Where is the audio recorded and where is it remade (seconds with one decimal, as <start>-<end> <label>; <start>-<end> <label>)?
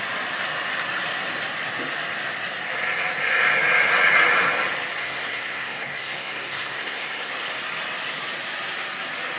0.0-5.0 recorded; 5.0-7.3 remade; 7.3-9.4 recorded